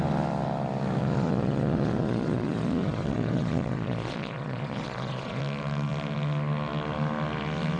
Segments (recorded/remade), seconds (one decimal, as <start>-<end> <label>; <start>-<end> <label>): 0.0-1.0 recorded; 1.0-5.4 remade; 5.4-7.8 recorded